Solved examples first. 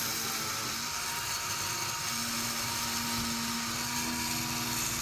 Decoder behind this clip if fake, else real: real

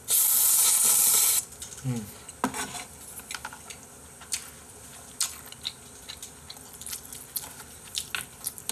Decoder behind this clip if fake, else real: real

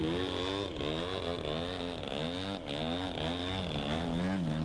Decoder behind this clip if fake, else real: real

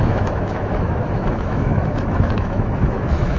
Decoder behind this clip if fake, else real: fake, autoencoder, DAC-VAE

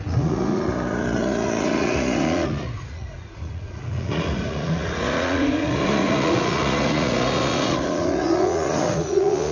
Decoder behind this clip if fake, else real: fake, vocoder, Vocos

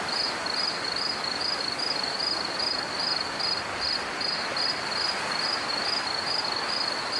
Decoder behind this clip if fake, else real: real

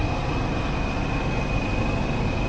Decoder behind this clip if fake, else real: real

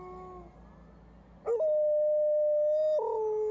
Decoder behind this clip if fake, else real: real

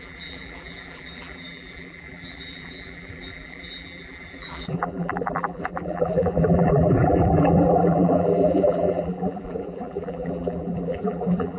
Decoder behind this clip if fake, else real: fake, vocoder, BigVGAN v2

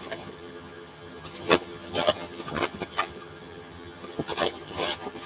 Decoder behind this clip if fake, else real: fake, vocoder, HiFi-GAN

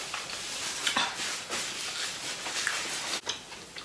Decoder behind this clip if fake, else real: real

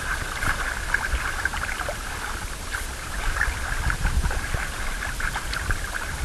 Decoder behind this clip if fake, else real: real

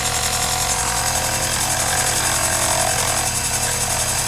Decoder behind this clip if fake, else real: real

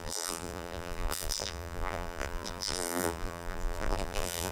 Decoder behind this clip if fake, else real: fake, vocoder, BigVGAN v2